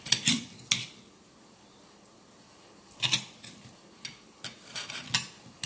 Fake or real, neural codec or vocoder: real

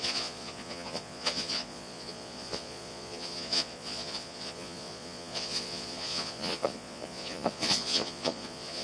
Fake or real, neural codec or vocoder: fake, vocoder, Vocos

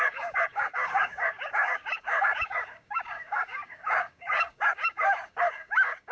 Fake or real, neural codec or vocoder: fake, codec, DAC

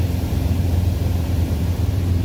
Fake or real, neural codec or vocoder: fake, vocoder, BigVGAN v2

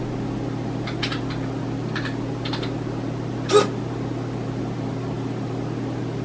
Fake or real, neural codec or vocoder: real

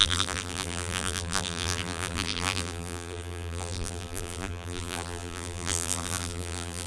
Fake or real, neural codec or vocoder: fake, vocoder, BigVGAN v2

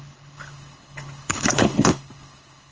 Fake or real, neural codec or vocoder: fake, codec, HILCodec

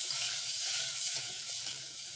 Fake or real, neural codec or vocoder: fake, codec, DAC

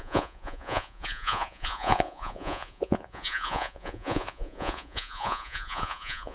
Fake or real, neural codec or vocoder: fake, vocoder, Vocos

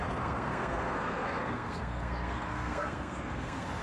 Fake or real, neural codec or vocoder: fake, codec, SNAC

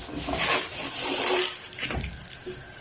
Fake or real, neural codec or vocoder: real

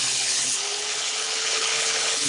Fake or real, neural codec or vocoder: fake, codec, HILCodec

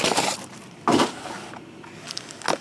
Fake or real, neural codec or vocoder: real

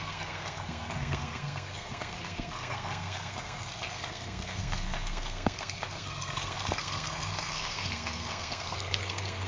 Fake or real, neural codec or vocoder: fake, codec, SNAC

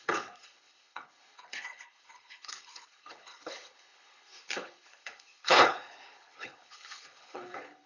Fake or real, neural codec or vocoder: fake, codec, HILCodec